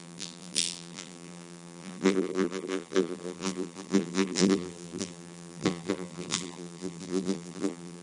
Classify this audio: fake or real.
fake